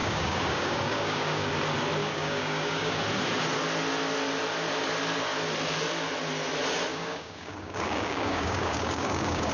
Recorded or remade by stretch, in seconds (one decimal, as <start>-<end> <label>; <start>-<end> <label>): 0.0-1.5 remade; 1.5-2.0 recorded; 2.0-3.0 remade; 3.0-6.9 recorded; 6.9-9.5 remade